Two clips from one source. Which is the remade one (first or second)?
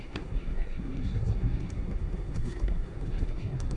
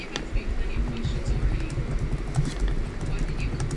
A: first